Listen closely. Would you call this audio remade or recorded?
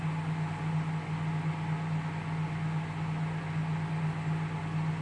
recorded